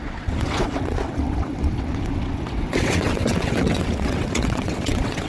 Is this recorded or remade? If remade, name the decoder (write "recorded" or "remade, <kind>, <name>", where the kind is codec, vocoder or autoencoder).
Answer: remade, vocoder, WaveNeXt